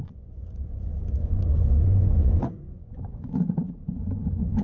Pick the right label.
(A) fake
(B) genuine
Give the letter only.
A